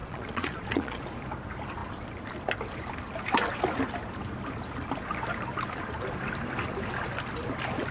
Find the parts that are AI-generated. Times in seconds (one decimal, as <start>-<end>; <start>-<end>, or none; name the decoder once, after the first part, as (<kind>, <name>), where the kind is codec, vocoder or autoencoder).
0.0-1.0 (vocoder, Vocos)